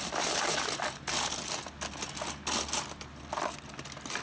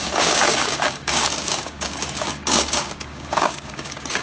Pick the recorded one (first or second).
first